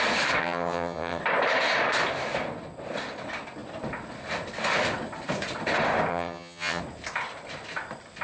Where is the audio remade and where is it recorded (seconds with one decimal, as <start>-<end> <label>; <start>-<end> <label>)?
0.0-0.4 recorded; 0.4-1.2 remade; 1.2-6.1 recorded; 6.1-6.8 remade; 6.8-8.2 recorded